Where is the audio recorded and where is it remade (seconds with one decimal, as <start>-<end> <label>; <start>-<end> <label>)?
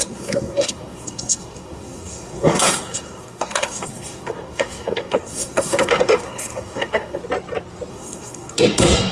0.0-7.2 remade; 7.2-7.9 recorded; 7.9-9.1 remade